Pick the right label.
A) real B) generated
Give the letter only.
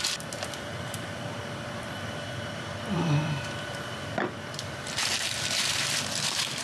B